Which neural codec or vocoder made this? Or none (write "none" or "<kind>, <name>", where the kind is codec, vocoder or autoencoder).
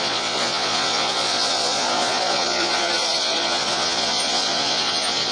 vocoder, Vocos